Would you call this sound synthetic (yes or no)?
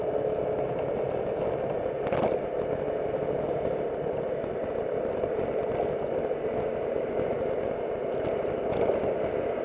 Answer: no